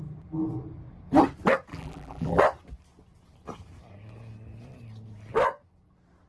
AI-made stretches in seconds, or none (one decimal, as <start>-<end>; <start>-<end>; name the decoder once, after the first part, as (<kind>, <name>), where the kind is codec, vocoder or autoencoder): 1.7-2.4 (vocoder, BigVGAN v2)